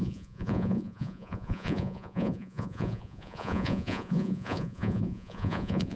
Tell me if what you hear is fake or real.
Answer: fake